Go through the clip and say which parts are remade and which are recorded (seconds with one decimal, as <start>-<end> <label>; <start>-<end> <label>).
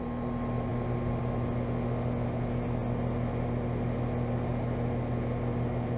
0.0-6.0 recorded